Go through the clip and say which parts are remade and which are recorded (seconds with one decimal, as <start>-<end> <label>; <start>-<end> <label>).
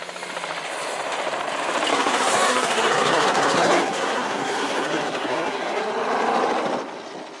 0.0-1.9 recorded; 1.9-5.9 remade; 5.9-7.4 recorded